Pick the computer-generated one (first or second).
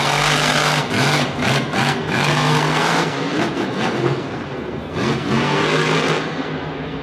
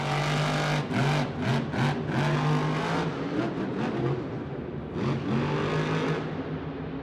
first